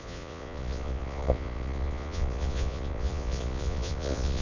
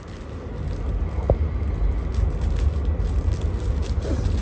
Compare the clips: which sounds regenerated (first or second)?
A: first